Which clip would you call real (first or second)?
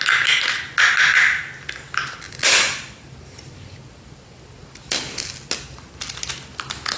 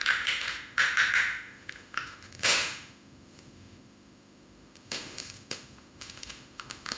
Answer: first